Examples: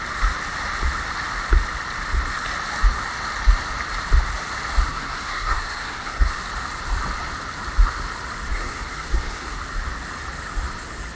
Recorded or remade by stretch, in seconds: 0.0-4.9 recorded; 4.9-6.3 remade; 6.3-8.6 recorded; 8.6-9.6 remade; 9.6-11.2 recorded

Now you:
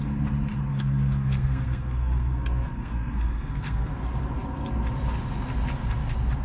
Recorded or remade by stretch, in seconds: 0.0-0.7 recorded; 0.7-3.9 remade; 3.9-6.4 recorded

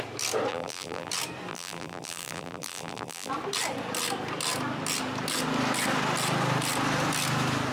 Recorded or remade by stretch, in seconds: 0.0-0.5 recorded; 0.5-1.1 remade; 1.1-1.5 recorded; 1.5-3.3 remade; 3.3-7.7 recorded

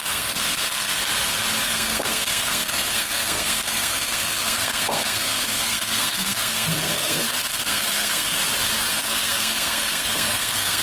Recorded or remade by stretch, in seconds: 0.0-1.0 remade; 1.0-1.6 recorded; 1.6-8.4 remade; 8.4-8.9 recorded; 8.9-10.8 remade

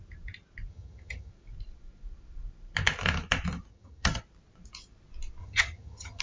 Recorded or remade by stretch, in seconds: 0.0-0.7 recorded; 0.7-1.3 remade; 1.3-3.7 recorded; 3.7-4.2 remade; 4.2-5.4 recorded; 5.4-6.2 remade

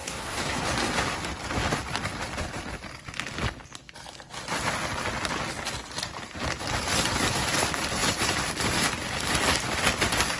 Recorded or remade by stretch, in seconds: 0.0-0.6 remade; 0.6-10.4 recorded

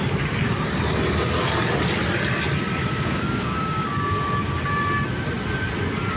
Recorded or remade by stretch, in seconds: 0.0-2.8 recorded; 2.8-4.5 remade; 4.5-6.2 recorded

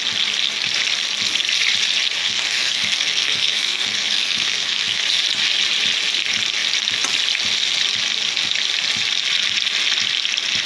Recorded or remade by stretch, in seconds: 0.0-2.2 recorded; 2.2-5.0 remade; 5.0-10.7 recorded